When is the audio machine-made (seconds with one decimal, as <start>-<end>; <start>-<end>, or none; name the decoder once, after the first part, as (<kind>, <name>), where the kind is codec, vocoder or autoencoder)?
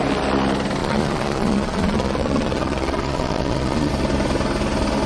0.8-3.9 (vocoder, Vocos)